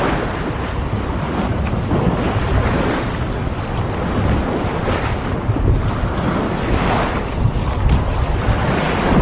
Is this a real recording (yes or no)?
yes